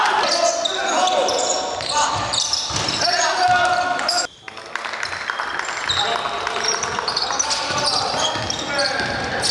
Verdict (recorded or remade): recorded